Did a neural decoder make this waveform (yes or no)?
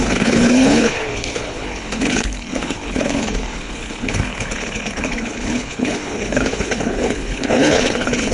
yes